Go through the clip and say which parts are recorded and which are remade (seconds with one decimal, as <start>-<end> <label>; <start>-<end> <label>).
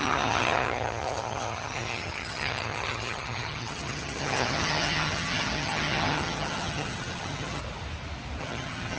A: 0.0-7.6 remade; 7.6-8.4 recorded; 8.4-9.0 remade